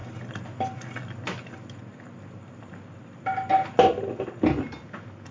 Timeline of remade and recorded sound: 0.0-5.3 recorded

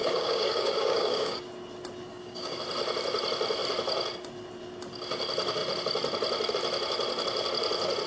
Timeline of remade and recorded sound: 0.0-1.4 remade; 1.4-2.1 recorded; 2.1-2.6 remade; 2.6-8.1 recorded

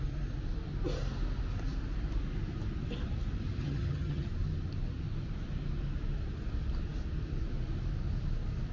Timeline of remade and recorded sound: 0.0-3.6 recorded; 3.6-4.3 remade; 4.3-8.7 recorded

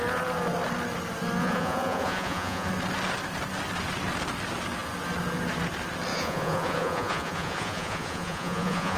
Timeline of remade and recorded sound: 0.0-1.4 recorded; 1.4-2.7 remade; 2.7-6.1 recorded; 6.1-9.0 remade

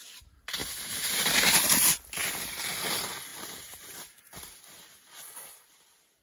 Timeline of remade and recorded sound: 0.0-0.6 recorded; 0.6-1.6 remade; 1.6-3.3 recorded; 3.3-4.6 remade; 4.6-6.2 recorded

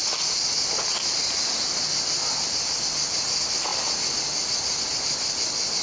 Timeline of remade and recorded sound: 0.0-5.8 recorded

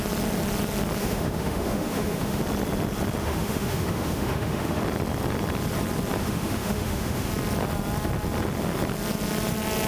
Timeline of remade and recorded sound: 0.0-1.0 recorded; 1.0-2.4 remade; 2.4-3.2 recorded; 3.2-4.8 remade; 4.8-6.2 recorded; 6.2-7.3 remade; 7.3-9.9 recorded

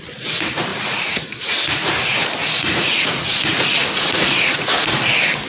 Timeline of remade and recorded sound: 0.0-0.7 recorded; 0.7-1.9 remade; 1.9-2.4 recorded; 2.4-4.7 remade; 4.7-5.5 recorded